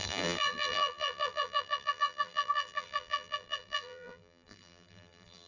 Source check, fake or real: fake